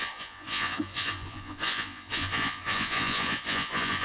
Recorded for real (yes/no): no